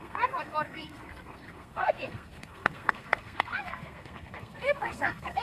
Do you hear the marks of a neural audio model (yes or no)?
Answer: yes